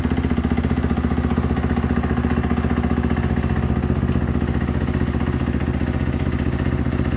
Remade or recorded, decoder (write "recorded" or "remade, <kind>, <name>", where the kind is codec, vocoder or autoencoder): recorded